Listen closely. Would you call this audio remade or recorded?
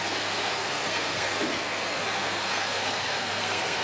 remade